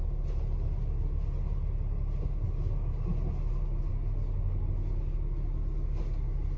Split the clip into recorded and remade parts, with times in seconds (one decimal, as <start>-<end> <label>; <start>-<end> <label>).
0.0-6.6 recorded